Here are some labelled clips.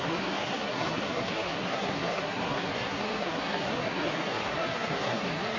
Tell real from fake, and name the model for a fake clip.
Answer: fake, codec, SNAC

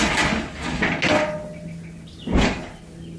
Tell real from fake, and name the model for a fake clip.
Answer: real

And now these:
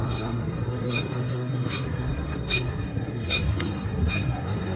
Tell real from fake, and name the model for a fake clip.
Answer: fake, codec, SNAC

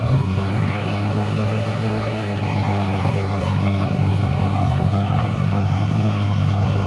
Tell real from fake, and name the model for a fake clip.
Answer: fake, codec, SNAC